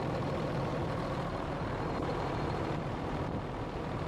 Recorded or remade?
remade